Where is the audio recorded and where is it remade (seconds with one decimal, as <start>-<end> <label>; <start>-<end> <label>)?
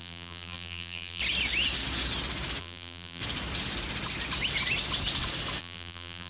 0.0-1.2 remade; 1.2-2.6 recorded; 2.6-3.2 remade; 3.2-5.6 recorded; 5.6-6.3 remade